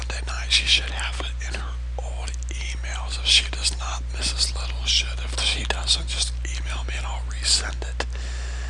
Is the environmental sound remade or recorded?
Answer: recorded